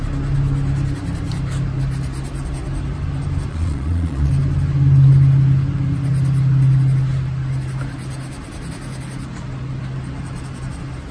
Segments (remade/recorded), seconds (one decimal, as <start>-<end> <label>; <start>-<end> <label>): 0.0-3.5 recorded; 3.5-4.3 remade; 4.3-11.1 recorded